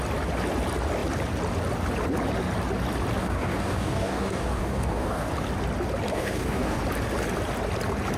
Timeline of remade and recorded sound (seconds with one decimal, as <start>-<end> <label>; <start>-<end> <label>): 0.0-3.2 recorded; 3.2-5.3 remade; 5.3-6.1 recorded; 6.1-6.8 remade; 6.8-8.2 recorded